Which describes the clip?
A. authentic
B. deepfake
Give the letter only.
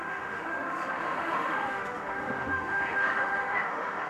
B